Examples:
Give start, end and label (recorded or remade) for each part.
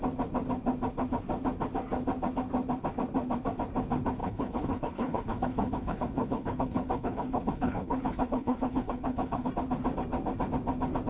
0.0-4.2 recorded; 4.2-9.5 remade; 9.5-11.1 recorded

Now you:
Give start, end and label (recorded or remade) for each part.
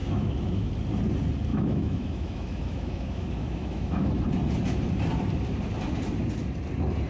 0.0-0.7 remade; 0.7-1.5 recorded; 1.5-4.2 remade; 4.2-7.1 recorded